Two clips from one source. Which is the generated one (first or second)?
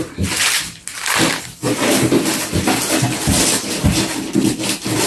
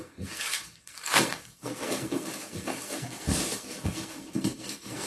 second